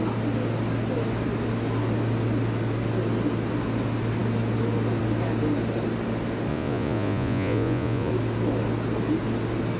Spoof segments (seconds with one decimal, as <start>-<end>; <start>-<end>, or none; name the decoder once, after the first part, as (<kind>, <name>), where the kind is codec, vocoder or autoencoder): 6.5-8.1 (vocoder, Vocos)